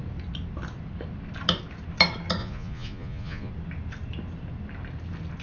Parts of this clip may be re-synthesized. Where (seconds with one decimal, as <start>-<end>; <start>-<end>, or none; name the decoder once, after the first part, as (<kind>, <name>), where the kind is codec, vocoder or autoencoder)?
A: 2.4-3.5 (vocoder, Vocos)